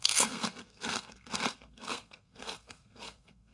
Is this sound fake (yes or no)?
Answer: yes